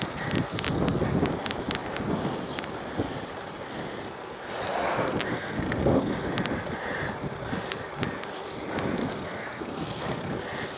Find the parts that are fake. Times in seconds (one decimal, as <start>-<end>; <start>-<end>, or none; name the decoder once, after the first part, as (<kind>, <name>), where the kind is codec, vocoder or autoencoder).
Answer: 5.3-6.1 (codec, SNAC); 9.0-10.3